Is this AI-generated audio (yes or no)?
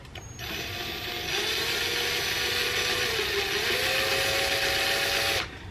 no